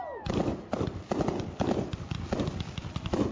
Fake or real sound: real